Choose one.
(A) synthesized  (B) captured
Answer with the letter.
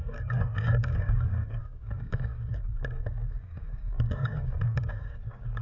A